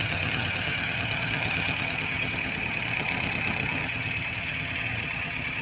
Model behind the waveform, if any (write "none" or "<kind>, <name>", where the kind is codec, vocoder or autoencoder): vocoder, HiFi-GAN